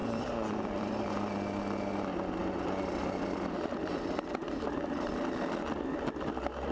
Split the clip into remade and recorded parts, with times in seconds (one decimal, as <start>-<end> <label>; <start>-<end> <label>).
0.0-1.1 remade; 1.1-2.4 recorded; 2.4-4.5 remade; 4.5-6.7 recorded